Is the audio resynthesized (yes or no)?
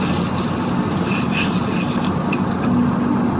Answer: no